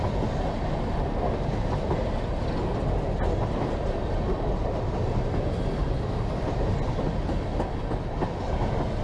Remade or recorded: recorded